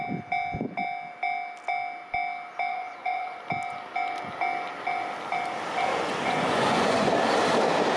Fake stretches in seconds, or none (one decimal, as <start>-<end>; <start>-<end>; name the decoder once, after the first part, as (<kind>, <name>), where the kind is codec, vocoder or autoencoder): 2.7-3.4 (vocoder, Vocos); 5.9-7.1